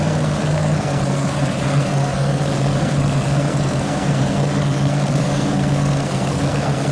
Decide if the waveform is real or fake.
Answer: fake